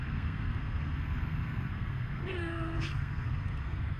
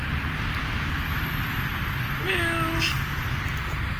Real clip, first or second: second